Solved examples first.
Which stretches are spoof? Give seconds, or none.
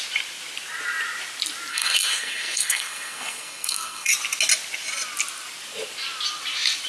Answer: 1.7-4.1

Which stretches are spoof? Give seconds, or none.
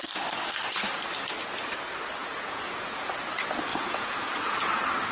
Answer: 2.2-3.2; 3.7-4.4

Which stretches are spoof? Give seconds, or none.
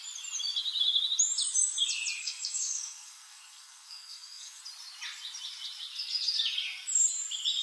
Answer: 2.2-4.6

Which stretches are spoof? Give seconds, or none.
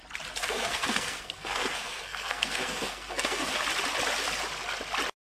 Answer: 0.4-3.5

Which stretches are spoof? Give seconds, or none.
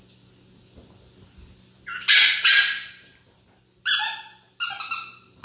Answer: none